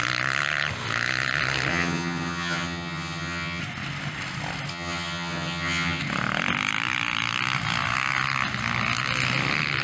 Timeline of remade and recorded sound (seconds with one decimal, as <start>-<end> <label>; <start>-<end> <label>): 0.0-1.7 recorded; 1.7-3.6 remade; 3.6-4.7 recorded; 4.7-6.0 remade; 6.0-9.8 recorded